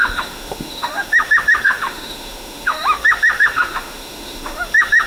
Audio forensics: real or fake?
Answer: fake